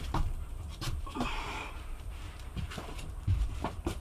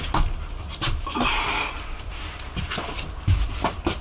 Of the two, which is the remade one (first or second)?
first